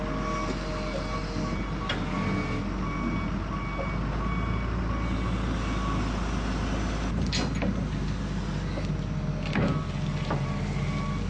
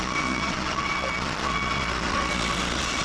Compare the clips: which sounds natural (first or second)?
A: first